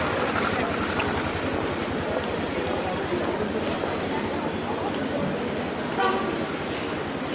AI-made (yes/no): no